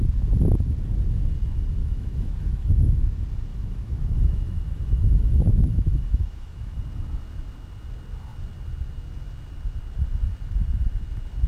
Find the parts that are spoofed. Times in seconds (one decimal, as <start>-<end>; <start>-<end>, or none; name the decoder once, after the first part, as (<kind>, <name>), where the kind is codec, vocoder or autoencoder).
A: 1.8-3.0 (autoencoder, DAC-VAE); 3.5-6.8